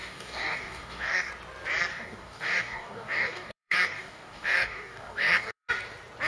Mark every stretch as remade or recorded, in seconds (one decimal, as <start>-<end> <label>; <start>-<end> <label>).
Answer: 0.0-1.3 remade; 1.3-1.9 recorded; 1.9-5.7 remade; 5.7-6.3 recorded